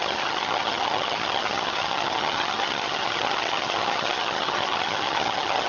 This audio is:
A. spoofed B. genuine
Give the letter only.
A